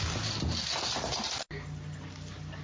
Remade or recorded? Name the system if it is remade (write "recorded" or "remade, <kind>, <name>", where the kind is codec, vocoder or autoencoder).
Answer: recorded